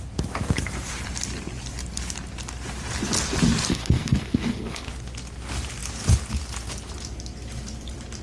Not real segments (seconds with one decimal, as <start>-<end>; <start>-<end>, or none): 3.7-4.9